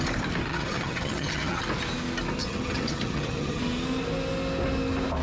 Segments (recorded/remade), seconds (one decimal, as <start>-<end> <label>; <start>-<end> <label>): 0.0-0.5 recorded; 0.5-1.6 remade; 1.6-2.4 recorded; 2.4-3.6 remade; 3.6-5.2 recorded